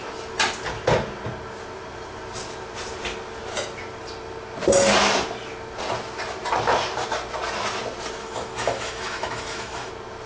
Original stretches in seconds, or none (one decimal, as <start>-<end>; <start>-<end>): 0.0-8.2; 9.9-10.3